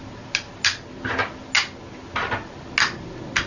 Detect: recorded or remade recorded